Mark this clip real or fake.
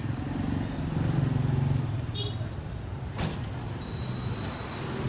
real